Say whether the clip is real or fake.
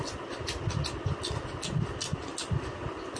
real